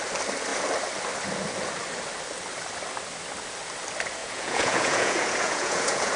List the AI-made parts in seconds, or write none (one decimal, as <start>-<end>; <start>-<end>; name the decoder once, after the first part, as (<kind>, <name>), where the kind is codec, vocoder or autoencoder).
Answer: 4.2-6.2 (vocoder, Vocos)